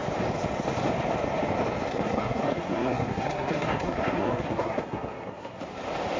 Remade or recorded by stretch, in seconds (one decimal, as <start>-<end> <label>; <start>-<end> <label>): 0.0-1.9 recorded; 1.9-5.6 remade; 5.6-6.2 recorded